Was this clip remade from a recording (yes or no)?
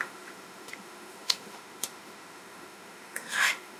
yes